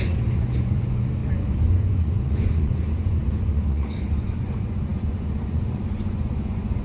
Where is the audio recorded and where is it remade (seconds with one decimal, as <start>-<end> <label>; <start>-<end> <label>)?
0.0-6.8 remade